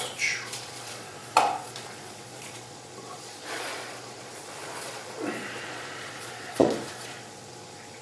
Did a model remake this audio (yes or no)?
yes